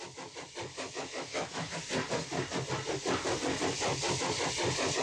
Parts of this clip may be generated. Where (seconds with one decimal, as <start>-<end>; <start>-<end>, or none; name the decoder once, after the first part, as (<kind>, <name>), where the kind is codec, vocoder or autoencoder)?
0.7-1.7 (autoencoder, DAC-VAE)